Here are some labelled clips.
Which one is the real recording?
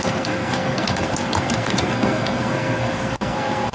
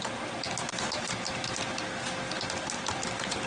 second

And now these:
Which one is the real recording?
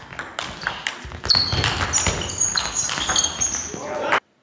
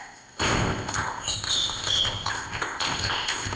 first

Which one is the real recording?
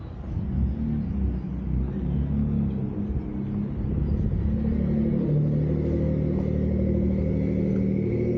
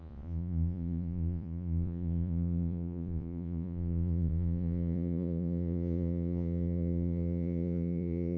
first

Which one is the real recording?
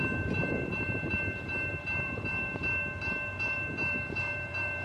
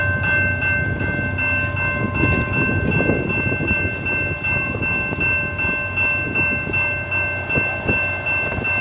second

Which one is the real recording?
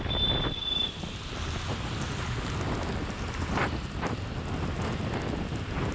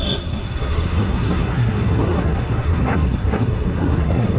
first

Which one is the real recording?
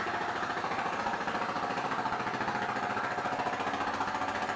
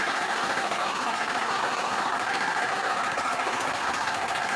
first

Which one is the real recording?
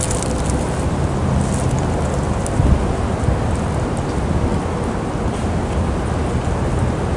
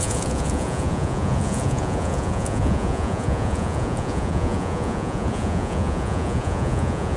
first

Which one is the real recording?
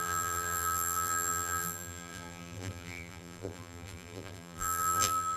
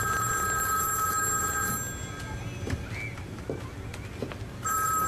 second